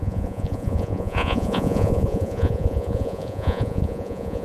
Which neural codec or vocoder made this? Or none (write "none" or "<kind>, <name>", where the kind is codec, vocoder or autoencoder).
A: vocoder, Vocos